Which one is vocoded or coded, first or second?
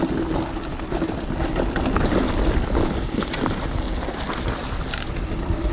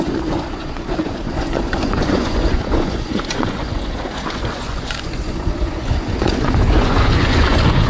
second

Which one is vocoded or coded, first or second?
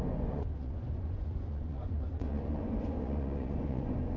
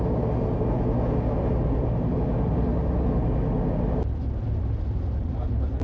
first